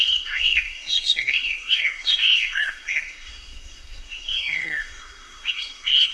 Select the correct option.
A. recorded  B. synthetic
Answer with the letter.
B